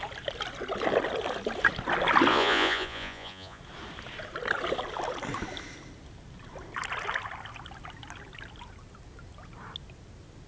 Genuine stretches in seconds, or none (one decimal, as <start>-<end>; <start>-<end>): 0.0-2.3; 3.6-10.5